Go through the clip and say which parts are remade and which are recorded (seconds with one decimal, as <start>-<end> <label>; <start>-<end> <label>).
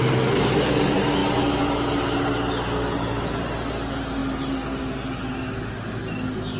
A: 0.0-6.6 recorded